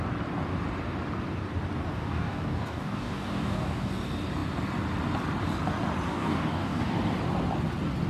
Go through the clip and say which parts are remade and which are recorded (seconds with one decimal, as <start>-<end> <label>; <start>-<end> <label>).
0.0-1.9 recorded; 1.9-3.9 remade; 3.9-6.1 recorded; 6.1-6.9 remade; 6.9-8.1 recorded